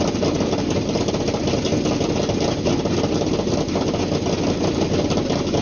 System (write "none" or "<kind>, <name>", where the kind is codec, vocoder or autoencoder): none